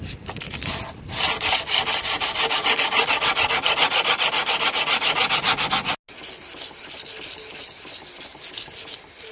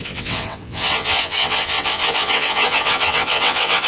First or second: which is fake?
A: second